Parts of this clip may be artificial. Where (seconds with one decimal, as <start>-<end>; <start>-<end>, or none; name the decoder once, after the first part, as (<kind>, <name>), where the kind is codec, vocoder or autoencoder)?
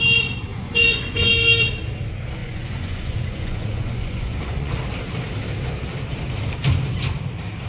0.5-1.3 (vocoder, Vocos); 2.4-4.7